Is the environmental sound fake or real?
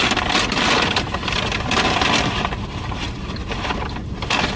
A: real